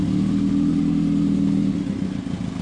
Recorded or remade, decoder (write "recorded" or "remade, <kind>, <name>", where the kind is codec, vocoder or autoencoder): recorded